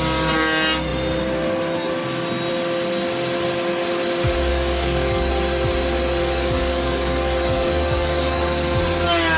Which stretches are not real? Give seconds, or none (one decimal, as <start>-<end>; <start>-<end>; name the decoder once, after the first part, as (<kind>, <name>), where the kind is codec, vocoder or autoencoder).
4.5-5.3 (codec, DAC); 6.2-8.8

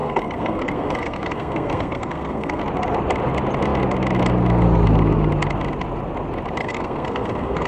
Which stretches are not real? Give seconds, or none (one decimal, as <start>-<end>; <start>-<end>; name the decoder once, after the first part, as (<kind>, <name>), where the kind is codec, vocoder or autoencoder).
0.0-2.6 (codec, SNAC); 6.6-7.7

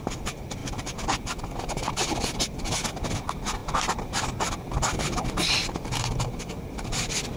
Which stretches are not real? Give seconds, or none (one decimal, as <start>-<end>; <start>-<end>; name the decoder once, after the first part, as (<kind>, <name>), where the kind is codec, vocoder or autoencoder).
3.6-4.2 (vocoder, BigVGAN v2)

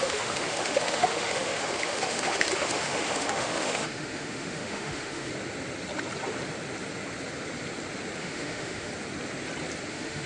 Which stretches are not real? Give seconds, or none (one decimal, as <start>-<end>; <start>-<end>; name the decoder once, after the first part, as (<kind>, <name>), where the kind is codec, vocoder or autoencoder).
0.0-5.3 (autoencoder, DAC-VAE); 8.2-8.9; 9.9-10.3

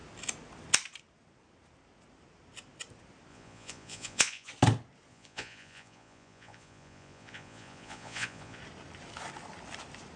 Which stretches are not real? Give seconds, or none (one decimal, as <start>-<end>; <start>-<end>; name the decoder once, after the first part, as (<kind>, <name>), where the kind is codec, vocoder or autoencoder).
3.3-4.5 (vocoder, Vocos); 5.1-8.6